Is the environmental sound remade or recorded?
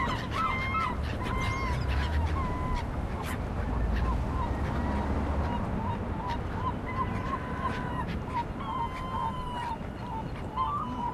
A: recorded